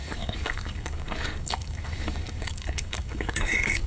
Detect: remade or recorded remade